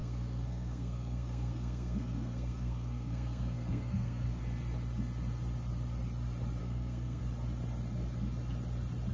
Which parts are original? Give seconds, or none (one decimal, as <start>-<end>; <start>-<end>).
4.4-6.6; 7.2-9.1